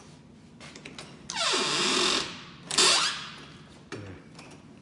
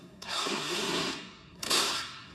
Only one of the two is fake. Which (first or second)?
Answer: second